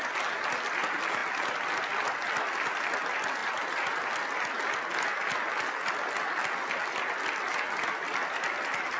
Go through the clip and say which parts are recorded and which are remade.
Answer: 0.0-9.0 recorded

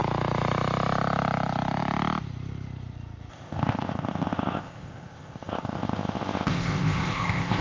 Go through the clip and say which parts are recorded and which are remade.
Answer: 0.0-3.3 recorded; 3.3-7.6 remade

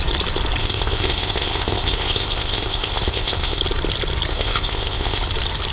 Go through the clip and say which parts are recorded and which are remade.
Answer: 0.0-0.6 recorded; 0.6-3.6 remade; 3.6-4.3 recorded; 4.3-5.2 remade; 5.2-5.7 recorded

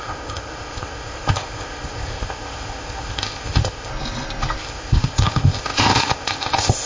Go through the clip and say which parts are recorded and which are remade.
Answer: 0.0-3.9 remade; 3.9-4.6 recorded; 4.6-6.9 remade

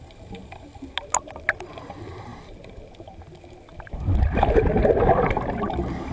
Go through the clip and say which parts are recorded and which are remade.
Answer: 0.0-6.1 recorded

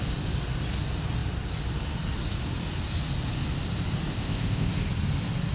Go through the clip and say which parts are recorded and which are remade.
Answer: 0.0-4.1 recorded; 4.1-4.7 remade; 4.7-5.5 recorded